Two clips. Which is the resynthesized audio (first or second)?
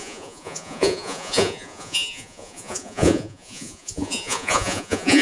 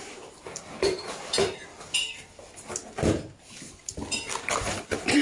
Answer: first